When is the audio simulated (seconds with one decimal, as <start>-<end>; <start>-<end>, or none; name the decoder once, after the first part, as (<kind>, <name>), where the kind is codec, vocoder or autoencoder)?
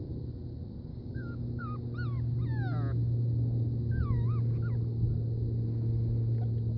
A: 0.9-1.6 (codec, DAC)